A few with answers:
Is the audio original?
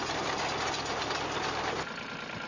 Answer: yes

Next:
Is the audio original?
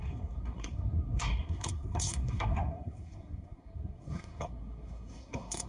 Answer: no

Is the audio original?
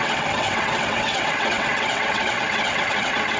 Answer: no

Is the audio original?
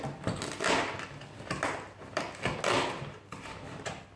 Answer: yes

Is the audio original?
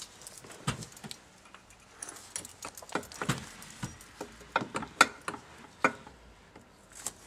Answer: yes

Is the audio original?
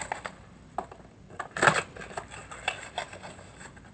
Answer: yes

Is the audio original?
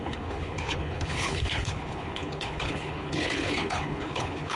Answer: no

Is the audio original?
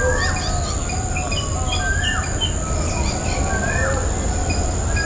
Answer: yes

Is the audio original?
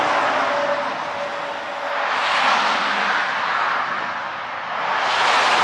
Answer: yes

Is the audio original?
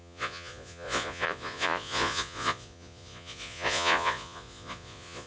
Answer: no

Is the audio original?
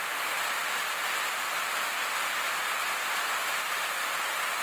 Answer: yes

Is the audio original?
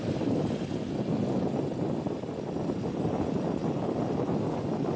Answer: yes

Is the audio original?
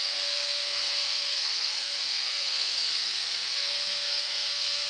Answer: no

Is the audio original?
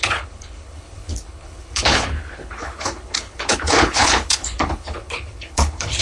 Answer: no